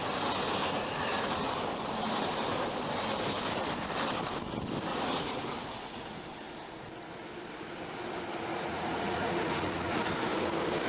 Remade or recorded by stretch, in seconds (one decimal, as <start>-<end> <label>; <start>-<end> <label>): 0.0-0.6 recorded; 0.6-1.5 remade; 1.5-4.9 recorded; 4.9-6.2 remade; 6.2-8.5 recorded; 8.5-10.0 remade; 10.0-10.9 recorded